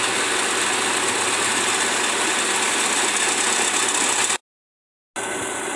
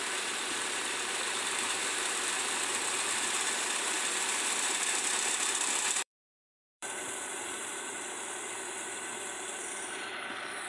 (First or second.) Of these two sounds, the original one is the first